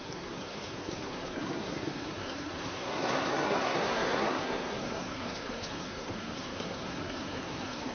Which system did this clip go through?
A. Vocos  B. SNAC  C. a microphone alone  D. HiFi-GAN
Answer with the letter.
B